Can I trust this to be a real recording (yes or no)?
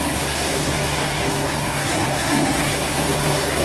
no